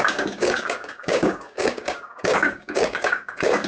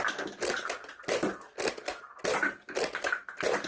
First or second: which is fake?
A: first